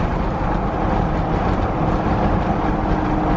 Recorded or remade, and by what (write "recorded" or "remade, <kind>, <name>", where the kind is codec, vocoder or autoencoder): recorded